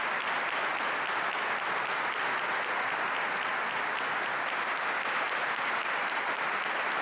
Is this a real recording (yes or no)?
yes